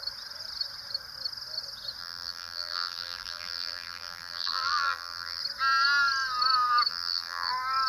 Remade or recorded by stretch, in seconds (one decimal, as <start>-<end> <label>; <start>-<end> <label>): 0.0-2.0 recorded; 2.0-5.4 remade; 5.4-6.9 recorded; 6.9-7.5 remade; 7.5-7.9 recorded